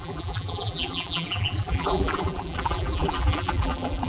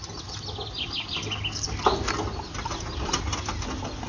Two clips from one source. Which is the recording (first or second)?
second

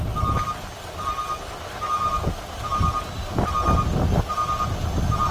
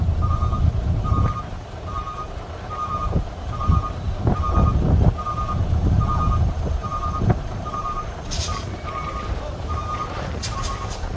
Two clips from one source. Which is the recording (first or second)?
first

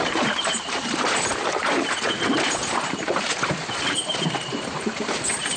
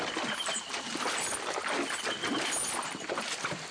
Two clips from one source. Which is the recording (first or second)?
second